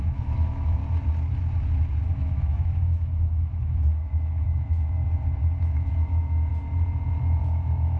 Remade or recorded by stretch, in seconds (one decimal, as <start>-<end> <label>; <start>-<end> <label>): 0.0-0.8 remade; 0.8-2.0 recorded; 2.0-5.0 remade; 5.0-5.6 recorded; 5.6-6.5 remade; 6.5-7.4 recorded; 7.4-8.0 remade